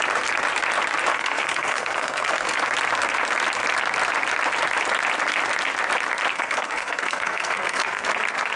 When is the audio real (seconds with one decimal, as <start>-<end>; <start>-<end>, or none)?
0.0-1.1; 2.6-6.3; 8.1-8.6